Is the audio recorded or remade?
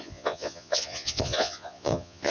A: remade